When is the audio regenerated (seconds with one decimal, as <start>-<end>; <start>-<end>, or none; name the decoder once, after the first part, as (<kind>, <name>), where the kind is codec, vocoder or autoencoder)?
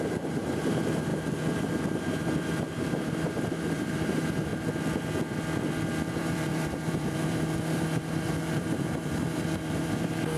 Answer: 0.0-4.5 (vocoder, BigVGAN v2); 6.1-10.4